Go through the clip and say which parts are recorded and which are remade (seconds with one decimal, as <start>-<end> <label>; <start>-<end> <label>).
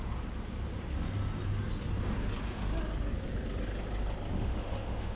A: 0.0-4.3 recorded; 4.3-5.2 remade